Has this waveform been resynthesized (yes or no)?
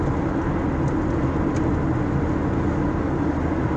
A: no